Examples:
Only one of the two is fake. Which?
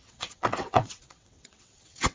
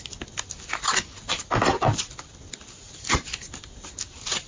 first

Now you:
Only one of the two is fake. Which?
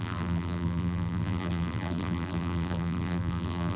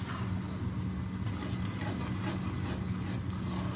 first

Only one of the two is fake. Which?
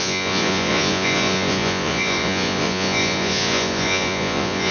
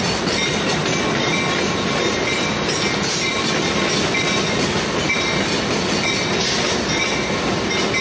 first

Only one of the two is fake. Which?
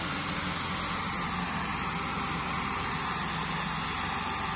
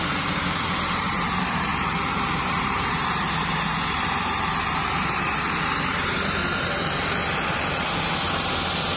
second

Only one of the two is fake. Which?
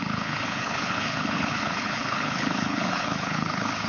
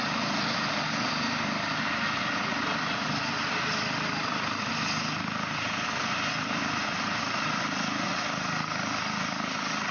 first